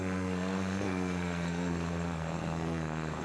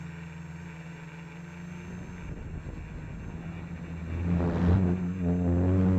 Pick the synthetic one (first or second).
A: first